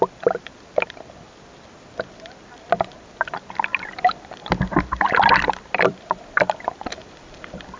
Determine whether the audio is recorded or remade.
remade